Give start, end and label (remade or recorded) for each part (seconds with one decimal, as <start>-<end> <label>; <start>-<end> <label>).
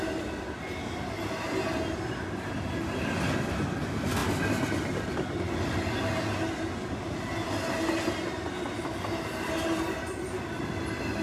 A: 0.0-11.2 recorded